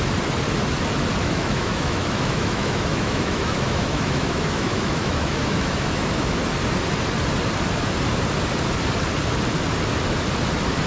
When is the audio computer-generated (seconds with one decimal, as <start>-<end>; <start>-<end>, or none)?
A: 1.2-6.4